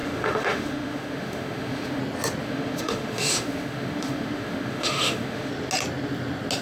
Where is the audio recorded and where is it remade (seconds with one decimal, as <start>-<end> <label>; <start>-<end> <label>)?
0.0-2.0 remade; 2.0-2.4 recorded; 2.4-5.5 remade; 5.5-6.6 recorded